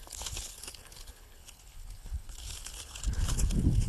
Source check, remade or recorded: remade